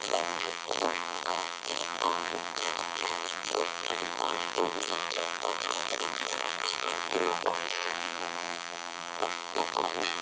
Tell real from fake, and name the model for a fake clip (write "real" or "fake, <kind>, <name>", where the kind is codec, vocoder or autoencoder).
fake, vocoder, BigVGAN v2